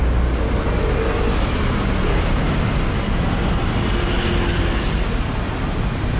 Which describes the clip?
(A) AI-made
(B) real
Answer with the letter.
B